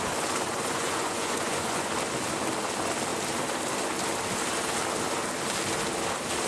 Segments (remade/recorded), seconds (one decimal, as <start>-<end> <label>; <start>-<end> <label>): 0.0-0.5 recorded; 0.5-1.9 remade; 1.9-6.5 recorded